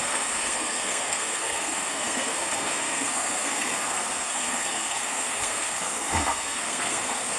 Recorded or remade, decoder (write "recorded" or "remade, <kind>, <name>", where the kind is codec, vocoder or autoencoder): remade, codec, SNAC